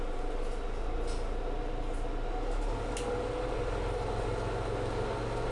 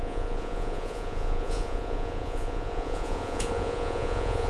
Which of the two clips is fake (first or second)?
second